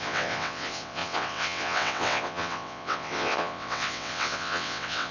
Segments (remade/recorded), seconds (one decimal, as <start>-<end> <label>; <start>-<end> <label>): 0.0-5.1 remade